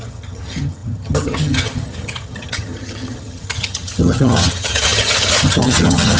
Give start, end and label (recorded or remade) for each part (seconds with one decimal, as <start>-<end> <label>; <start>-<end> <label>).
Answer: 0.0-6.2 remade